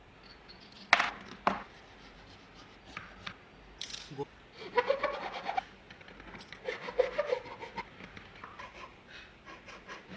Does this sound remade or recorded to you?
recorded